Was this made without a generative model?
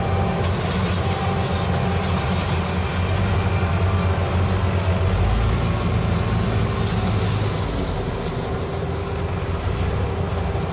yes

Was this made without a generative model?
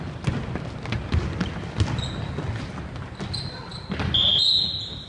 yes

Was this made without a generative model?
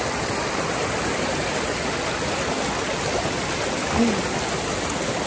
yes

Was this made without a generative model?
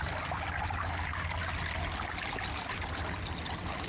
yes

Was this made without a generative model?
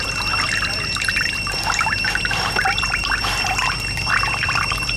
no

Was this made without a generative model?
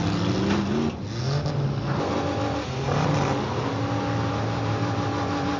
yes